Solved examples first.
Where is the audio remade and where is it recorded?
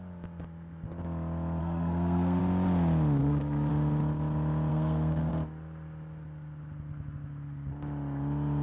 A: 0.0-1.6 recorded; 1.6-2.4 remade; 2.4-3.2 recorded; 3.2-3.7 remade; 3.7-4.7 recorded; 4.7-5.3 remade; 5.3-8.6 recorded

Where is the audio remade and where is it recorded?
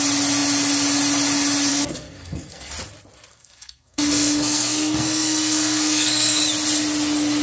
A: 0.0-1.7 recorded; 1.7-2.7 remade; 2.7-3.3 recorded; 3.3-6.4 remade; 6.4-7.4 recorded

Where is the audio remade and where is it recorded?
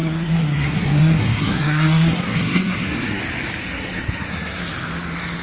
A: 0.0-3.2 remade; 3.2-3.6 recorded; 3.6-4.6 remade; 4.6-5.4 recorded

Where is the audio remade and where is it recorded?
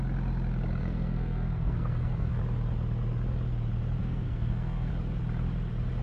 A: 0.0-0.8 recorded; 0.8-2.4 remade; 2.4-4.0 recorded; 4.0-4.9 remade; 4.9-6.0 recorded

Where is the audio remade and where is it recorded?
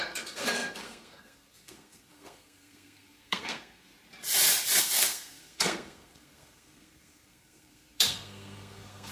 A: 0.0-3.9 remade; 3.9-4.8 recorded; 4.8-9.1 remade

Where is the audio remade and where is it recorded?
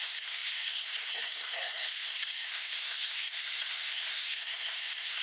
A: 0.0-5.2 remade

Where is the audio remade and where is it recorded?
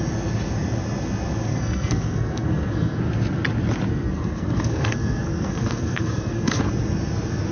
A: 0.0-1.5 recorded; 1.5-3.0 remade; 3.0-3.9 recorded; 3.9-6.6 remade; 6.6-7.5 recorded